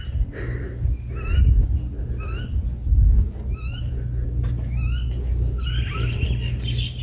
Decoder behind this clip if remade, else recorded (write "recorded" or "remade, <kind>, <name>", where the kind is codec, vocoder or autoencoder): recorded